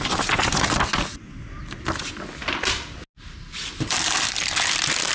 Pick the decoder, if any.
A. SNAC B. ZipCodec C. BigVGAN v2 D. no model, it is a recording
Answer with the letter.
D